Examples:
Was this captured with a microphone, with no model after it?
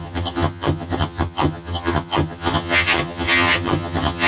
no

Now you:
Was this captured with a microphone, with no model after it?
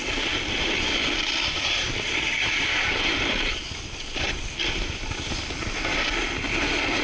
yes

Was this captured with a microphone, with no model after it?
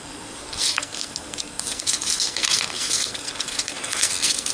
no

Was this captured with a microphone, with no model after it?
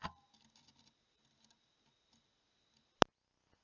yes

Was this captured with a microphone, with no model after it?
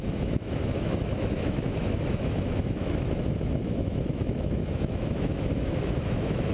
no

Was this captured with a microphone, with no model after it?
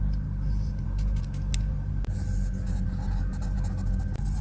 yes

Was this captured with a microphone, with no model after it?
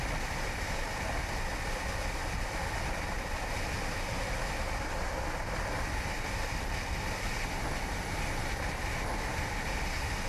yes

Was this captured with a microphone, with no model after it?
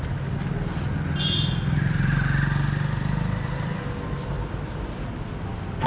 yes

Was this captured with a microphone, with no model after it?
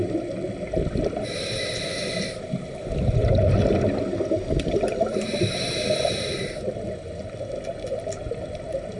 yes